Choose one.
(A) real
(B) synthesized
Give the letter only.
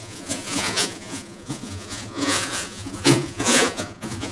B